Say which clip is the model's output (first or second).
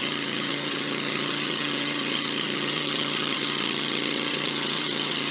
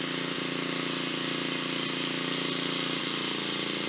first